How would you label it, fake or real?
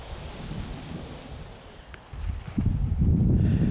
real